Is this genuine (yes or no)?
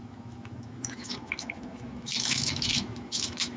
no